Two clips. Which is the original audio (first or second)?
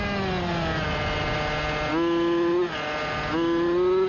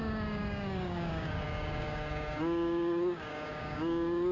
first